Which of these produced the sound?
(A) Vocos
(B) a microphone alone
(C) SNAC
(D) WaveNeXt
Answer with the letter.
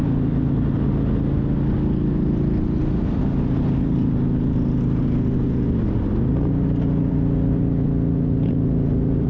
B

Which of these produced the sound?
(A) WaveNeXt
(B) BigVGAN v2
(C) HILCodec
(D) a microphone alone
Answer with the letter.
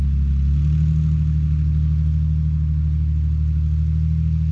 D